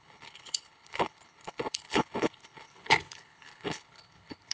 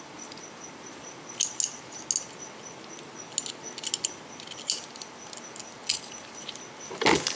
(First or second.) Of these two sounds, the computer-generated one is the first